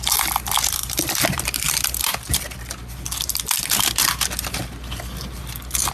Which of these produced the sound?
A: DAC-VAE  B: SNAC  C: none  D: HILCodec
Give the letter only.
C